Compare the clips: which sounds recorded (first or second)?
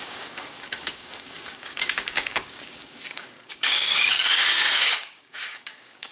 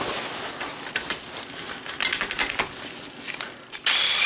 second